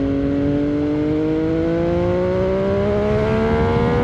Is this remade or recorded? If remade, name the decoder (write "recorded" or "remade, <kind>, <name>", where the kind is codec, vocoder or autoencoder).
recorded